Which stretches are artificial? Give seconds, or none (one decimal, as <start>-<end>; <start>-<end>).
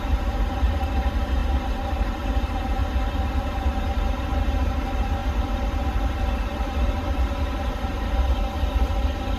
0.0-2.8; 3.4-9.4